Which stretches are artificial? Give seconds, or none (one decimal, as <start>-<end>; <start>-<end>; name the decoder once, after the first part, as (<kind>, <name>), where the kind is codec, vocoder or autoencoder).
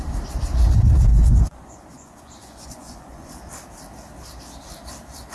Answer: 1.1-3.3 (vocoder, Vocos)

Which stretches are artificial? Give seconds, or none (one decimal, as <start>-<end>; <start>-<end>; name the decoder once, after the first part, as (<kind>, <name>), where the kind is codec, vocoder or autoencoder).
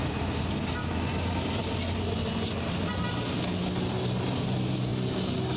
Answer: none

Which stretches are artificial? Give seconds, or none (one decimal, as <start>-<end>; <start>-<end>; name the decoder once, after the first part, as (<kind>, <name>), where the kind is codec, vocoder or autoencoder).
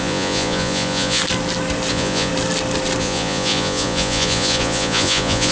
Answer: 0.0-1.2 (vocoder, Vocos); 1.9-2.3; 3.0-5.5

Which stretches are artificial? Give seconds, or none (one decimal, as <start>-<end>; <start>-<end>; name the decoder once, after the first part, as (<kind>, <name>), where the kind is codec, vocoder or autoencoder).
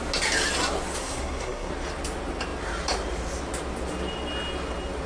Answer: 1.0-1.7 (codec, SNAC)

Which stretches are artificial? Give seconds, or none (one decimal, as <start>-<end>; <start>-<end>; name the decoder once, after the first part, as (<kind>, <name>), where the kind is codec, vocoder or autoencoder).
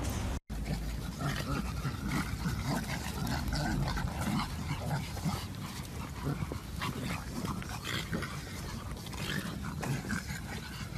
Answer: none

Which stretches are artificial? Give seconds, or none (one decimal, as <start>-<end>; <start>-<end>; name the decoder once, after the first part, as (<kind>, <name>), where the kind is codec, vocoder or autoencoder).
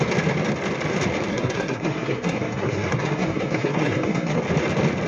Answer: 1.3-4.4 (codec, SNAC)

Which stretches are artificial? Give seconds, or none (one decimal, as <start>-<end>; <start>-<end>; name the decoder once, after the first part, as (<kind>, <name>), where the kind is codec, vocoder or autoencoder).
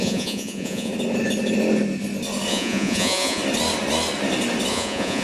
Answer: 0.0-0.9 (vocoder, Vocos); 2.5-3.4; 4.7-5.2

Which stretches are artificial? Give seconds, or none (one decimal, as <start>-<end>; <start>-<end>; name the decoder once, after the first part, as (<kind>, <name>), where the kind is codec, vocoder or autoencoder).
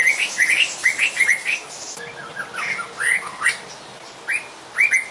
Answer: none